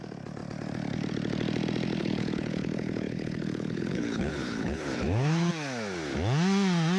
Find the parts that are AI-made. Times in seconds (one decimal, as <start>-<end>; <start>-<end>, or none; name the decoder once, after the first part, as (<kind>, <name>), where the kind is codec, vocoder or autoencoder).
2.0-5.5 (codec, HILCodec)